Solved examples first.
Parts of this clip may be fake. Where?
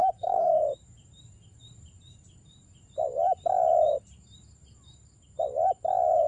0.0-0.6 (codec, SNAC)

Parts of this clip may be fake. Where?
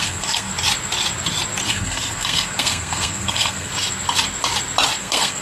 0.0-0.5 (codec, SNAC); 1.7-3.7; 5.0-5.4